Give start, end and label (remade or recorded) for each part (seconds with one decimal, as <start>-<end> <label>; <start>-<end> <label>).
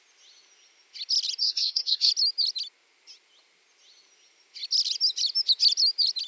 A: 0.0-1.4 recorded; 1.4-2.1 remade; 2.1-6.3 recorded